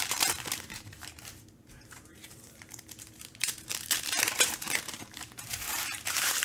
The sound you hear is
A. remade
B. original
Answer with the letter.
A